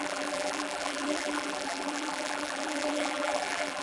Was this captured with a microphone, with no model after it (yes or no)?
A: no